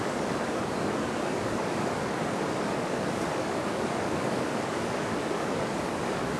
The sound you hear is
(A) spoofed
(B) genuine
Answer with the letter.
A